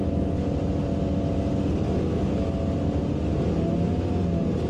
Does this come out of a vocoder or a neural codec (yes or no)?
no